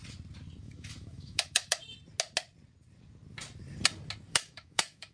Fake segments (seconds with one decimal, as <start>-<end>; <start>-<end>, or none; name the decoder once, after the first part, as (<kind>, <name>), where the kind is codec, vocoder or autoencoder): 0.6-1.8 (autoencoder, DAC-VAE); 4.3-5.1